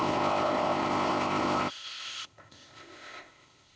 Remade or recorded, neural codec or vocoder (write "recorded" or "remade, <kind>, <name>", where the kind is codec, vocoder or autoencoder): remade, codec, ZipCodec